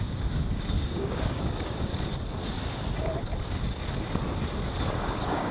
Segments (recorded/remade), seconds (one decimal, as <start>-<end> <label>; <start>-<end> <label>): 0.0-1.9 remade; 1.9-4.8 recorded; 4.8-5.5 remade